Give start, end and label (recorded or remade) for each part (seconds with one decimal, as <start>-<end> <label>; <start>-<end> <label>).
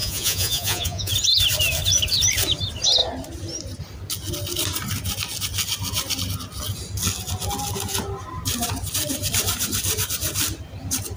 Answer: 0.0-1.1 remade; 1.1-11.2 recorded